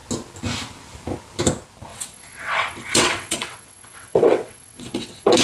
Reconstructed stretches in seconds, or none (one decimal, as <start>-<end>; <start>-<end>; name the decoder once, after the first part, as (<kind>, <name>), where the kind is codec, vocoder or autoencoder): 1.9-5.4 (vocoder, WaveNeXt)